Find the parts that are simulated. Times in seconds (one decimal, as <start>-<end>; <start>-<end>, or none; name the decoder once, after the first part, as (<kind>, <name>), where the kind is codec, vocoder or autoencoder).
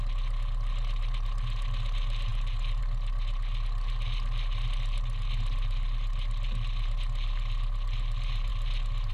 none